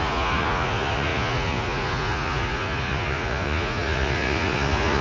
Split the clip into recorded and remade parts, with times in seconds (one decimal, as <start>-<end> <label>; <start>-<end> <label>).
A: 0.0-5.0 remade

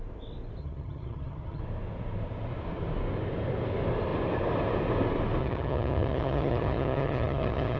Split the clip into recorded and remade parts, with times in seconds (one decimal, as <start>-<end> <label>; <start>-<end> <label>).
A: 0.0-0.6 recorded; 0.6-1.6 remade; 1.6-5.4 recorded; 5.4-7.8 remade

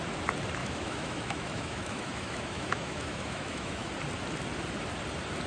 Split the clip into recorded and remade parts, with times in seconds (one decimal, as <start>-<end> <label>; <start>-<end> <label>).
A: 0.0-0.6 recorded; 0.6-3.9 remade; 3.9-5.5 recorded

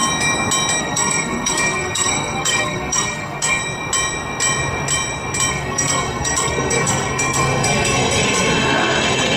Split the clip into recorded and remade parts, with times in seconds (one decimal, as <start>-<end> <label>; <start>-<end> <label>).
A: 0.0-0.8 recorded; 0.8-3.6 remade; 3.6-5.5 recorded; 5.5-9.4 remade

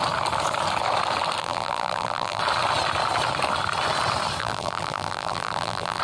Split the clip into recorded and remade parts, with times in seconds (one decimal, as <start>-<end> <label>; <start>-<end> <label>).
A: 0.0-1.4 recorded; 1.4-2.4 remade; 2.4-4.4 recorded; 4.4-6.0 remade

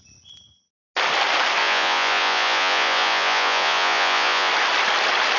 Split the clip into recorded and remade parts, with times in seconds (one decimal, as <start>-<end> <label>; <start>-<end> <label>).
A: 0.0-1.6 recorded; 1.6-4.5 remade; 4.5-5.4 recorded

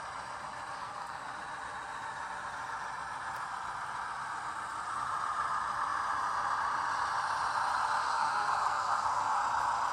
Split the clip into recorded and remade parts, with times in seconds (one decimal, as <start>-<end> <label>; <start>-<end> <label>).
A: 0.0-0.8 recorded; 0.8-1.3 remade; 1.3-8.0 recorded; 8.0-9.4 remade; 9.4-9.9 recorded

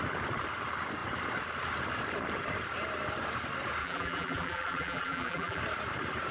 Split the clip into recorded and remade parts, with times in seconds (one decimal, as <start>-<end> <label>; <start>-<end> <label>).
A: 0.0-3.8 recorded; 3.8-5.6 remade; 5.6-6.3 recorded